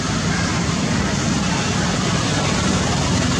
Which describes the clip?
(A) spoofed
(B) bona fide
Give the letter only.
B